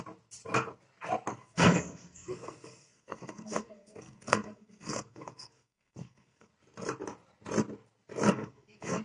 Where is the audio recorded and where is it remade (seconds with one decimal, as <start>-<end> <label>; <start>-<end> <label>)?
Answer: 0.0-1.3 recorded; 1.3-6.5 remade; 6.5-8.3 recorded; 8.3-9.0 remade